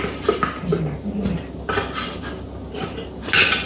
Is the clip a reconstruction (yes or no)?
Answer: no